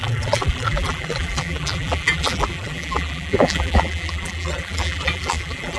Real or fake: fake